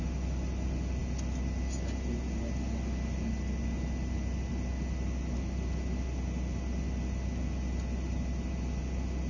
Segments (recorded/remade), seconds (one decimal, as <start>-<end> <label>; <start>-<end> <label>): 0.0-9.3 recorded